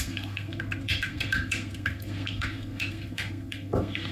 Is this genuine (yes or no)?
no